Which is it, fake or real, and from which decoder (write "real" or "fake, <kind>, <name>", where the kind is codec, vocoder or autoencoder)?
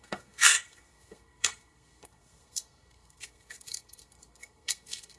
fake, codec, SNAC